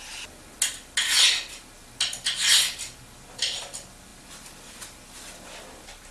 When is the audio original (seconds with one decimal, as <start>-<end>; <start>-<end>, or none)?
0.0-6.1